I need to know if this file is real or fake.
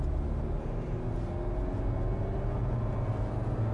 real